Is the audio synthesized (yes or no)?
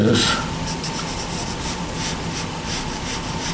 no